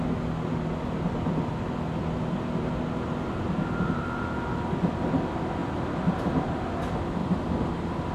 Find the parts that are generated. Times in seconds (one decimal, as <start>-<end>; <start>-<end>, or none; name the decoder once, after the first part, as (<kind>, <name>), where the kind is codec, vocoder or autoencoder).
none